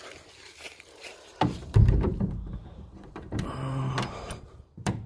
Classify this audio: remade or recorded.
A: remade